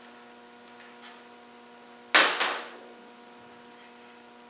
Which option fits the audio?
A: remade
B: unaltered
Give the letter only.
B